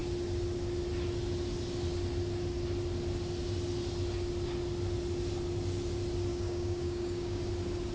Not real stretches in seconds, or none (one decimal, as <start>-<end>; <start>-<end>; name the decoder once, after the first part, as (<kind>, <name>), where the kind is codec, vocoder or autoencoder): 6.3-7.4 (codec, DAC)